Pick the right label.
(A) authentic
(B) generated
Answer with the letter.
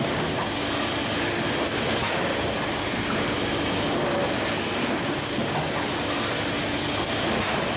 A